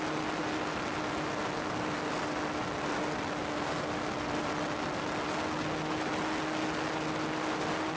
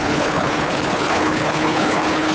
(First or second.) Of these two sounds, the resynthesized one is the second